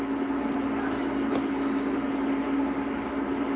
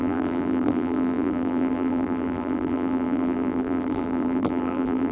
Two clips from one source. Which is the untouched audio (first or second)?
first